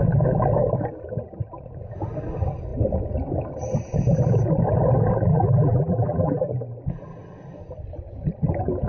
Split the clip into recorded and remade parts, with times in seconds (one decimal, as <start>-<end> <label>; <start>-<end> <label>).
0.0-5.3 recorded; 5.3-6.4 remade; 6.4-8.9 recorded